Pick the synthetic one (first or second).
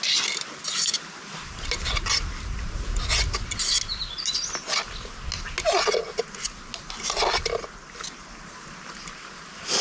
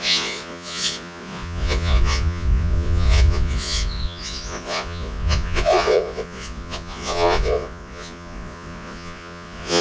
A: second